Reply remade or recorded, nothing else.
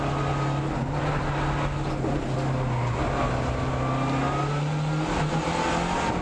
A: recorded